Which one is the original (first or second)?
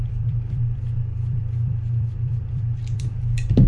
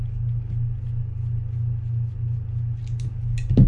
second